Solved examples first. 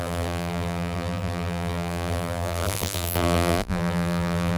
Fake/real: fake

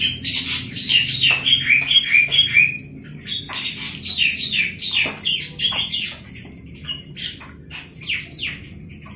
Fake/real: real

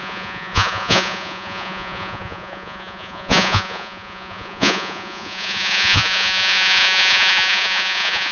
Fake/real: fake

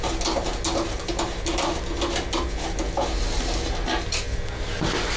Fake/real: real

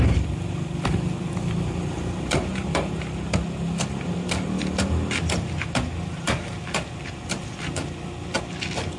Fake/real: real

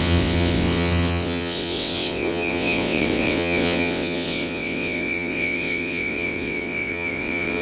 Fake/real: fake